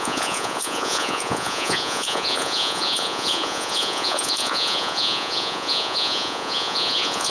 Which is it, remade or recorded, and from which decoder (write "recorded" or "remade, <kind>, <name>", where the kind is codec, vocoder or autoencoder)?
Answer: remade, vocoder, Vocos